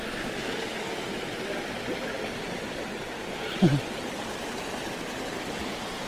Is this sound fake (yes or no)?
no